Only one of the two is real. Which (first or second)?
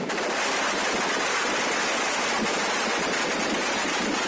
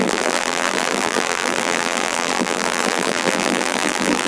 first